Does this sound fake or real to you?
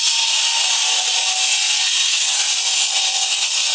real